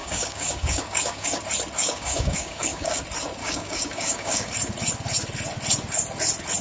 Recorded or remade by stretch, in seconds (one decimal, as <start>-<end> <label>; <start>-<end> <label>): 0.0-1.4 remade; 1.4-1.8 recorded; 1.8-3.0 remade; 3.0-3.4 recorded; 3.4-4.5 remade; 4.5-6.6 recorded